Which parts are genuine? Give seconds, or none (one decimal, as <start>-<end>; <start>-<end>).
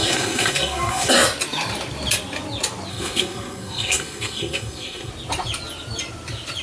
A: 1.1-2.9; 5.1-6.6